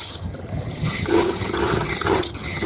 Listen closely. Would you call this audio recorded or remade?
remade